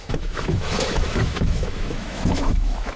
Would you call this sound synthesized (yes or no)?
yes